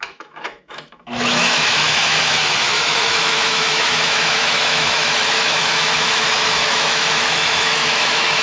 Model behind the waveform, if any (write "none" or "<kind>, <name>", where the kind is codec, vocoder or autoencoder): autoencoder, DAC-VAE